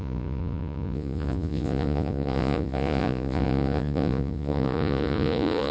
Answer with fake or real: fake